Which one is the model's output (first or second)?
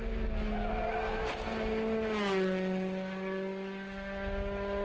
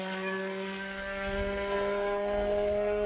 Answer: second